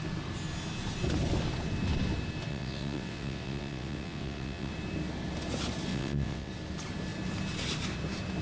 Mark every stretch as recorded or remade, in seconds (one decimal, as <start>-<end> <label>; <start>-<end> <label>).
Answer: 0.0-2.5 recorded; 2.5-4.7 remade; 4.7-5.9 recorded; 5.9-6.5 remade; 6.5-8.4 recorded